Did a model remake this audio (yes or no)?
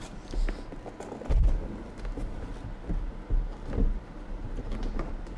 no